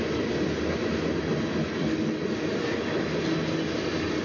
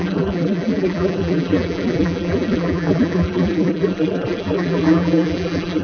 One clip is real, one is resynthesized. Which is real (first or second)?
first